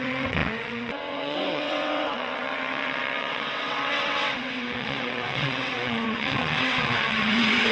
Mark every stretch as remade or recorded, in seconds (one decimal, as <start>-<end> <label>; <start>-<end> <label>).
0.0-7.7 remade